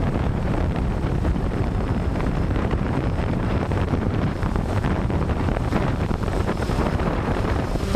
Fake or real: fake